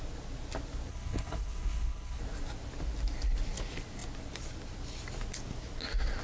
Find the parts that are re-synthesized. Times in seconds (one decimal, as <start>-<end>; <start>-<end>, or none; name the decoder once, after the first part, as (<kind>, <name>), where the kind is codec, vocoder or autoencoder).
0.9-2.2 (codec, HILCodec)